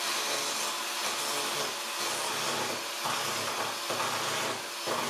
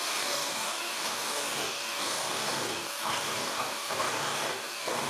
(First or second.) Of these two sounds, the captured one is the first